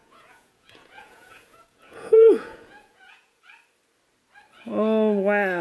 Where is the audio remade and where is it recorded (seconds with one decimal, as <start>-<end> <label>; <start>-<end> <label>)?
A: 0.0-3.4 remade; 3.4-5.6 recorded